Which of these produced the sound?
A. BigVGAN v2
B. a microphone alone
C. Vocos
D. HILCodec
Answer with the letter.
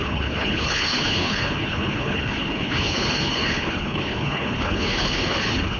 D